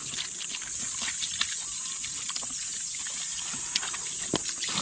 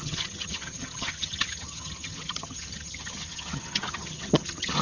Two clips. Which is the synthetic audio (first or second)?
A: second